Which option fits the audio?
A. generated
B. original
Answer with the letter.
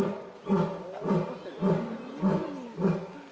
B